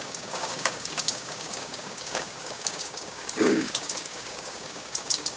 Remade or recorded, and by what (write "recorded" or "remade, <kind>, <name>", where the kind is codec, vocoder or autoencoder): remade, codec, DAC